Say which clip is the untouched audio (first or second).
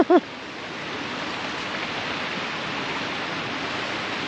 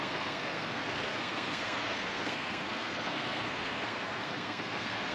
first